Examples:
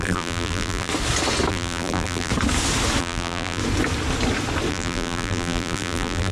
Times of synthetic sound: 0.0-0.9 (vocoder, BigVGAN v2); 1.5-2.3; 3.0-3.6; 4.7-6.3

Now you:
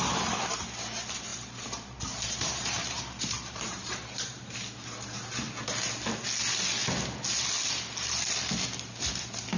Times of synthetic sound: 1.3-4.5 (vocoder, BigVGAN v2)

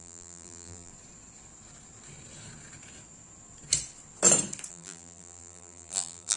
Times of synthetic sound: 0.0-0.9 (vocoder, BigVGAN v2); 4.7-6.4

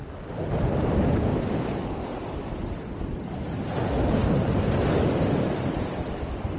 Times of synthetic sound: 0.0-0.5 (vocoder, BigVGAN v2); 4.2-6.6

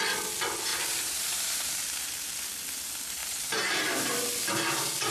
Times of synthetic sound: 0.7-1.8 (vocoder, BigVGAN v2); 3.2-4.0